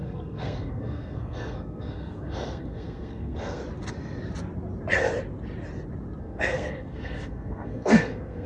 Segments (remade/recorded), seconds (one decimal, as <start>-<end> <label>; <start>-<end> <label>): 0.0-3.6 remade; 3.6-6.2 recorded; 6.2-8.5 remade